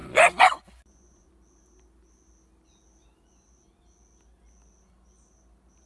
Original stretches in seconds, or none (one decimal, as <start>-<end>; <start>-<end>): 1.3-5.9